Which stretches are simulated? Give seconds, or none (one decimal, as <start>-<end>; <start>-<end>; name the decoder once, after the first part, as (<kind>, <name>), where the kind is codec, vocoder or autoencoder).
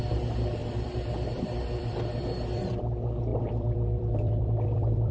0.6-2.7 (vocoder, BigVGAN v2); 3.3-5.1